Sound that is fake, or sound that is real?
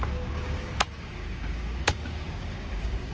fake